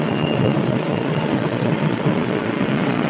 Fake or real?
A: fake